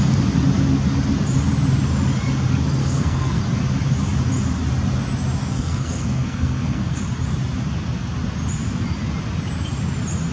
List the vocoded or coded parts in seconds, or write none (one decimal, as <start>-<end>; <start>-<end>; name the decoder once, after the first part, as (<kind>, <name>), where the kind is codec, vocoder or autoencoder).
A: 2.8-3.4 (codec, SNAC); 5.4-7.0